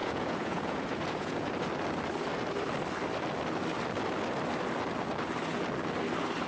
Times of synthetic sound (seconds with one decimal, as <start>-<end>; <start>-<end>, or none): 0.0-1.5